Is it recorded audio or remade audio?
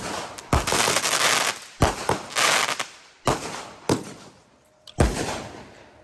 recorded